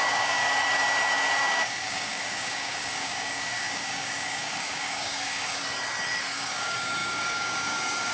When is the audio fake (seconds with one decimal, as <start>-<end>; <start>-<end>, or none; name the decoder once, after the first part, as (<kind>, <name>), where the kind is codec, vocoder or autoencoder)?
0.0-0.4 (codec, DAC); 1.4-5.6; 6.3-8.1